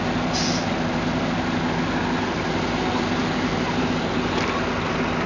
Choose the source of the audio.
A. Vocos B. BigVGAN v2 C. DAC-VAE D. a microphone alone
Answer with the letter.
D